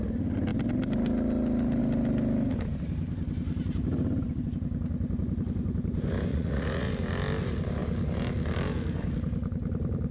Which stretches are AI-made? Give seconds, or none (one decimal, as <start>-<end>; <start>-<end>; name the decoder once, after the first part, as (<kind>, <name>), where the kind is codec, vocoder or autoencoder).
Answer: 6.3-6.9 (vocoder, Vocos)